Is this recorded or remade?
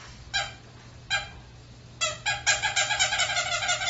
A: recorded